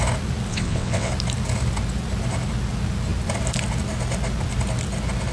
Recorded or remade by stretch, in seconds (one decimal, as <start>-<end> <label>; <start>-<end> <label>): 0.0-0.5 recorded; 0.5-1.1 remade; 1.1-5.3 recorded